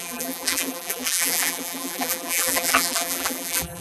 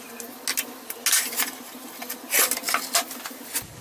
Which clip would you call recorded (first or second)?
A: second